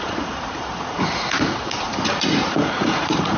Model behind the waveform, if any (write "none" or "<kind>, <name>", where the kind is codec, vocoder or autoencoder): vocoder, Vocos